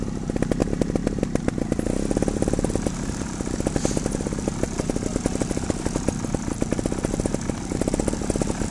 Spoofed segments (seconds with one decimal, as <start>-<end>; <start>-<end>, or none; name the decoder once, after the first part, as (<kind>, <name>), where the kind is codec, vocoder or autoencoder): none